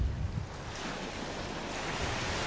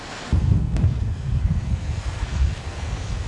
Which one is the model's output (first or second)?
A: second